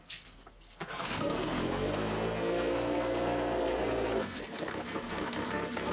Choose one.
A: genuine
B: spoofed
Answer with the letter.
B